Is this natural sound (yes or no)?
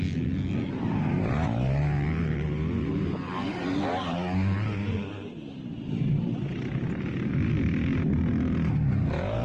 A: yes